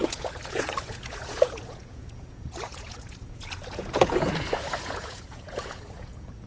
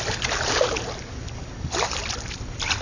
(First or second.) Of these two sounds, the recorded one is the second